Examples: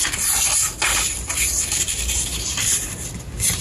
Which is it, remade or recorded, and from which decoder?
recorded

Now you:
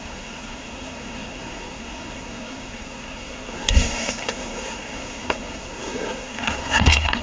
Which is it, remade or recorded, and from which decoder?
remade, codec, SNAC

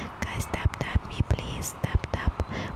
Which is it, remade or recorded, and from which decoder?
recorded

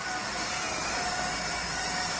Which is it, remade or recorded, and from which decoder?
recorded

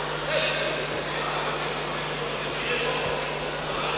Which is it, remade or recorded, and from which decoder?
recorded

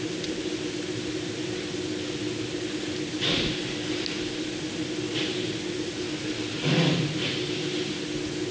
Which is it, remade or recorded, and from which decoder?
recorded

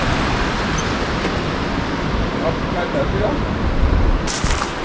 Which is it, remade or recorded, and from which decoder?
recorded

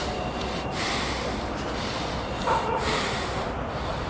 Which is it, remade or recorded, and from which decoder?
remade, vocoder, BigVGAN v2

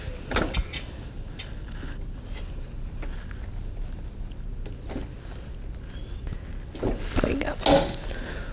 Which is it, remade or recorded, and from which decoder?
recorded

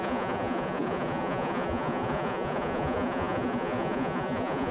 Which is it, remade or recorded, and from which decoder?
remade, vocoder, Vocos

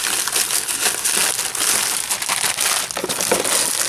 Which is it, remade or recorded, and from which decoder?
recorded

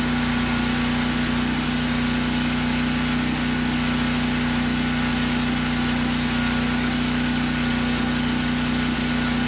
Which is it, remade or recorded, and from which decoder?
recorded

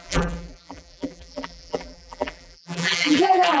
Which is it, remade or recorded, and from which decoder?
remade, vocoder, BigVGAN v2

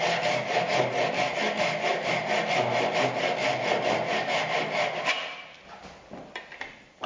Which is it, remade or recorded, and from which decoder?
recorded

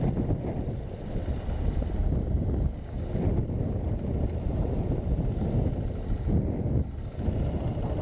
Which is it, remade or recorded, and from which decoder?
recorded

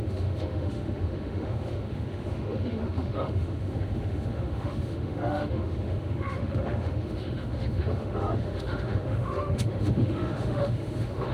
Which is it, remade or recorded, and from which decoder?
remade, autoencoder, DAC-VAE